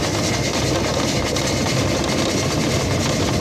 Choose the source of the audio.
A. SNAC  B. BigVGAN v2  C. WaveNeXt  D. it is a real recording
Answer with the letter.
D